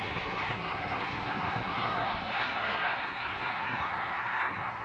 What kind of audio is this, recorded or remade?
remade